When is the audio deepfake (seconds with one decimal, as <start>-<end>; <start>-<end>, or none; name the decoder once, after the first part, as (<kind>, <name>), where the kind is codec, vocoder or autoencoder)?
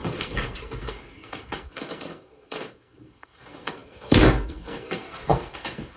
0.0-6.0 (codec, SNAC)